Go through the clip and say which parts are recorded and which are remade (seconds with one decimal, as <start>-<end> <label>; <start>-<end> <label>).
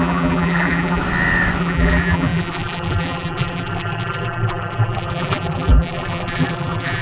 0.0-1.0 remade; 1.0-1.6 recorded; 1.6-7.0 remade